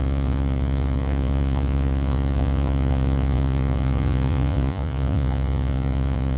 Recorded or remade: remade